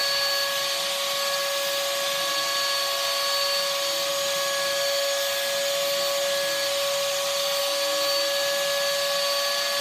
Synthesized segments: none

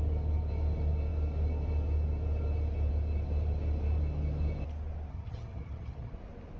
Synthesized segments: 5.1-6.1

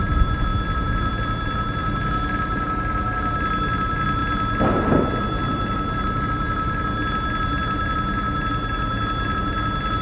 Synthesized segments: none

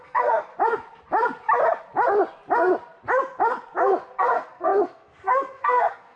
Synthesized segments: 0.0-0.5; 4.2-6.2

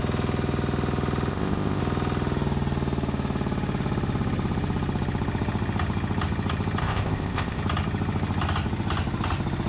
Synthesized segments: 1.3-1.8; 6.8-7.6

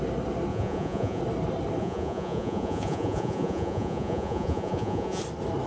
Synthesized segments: 0.5-1.2; 1.8-5.2

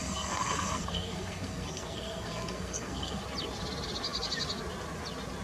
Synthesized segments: 0.0-3.2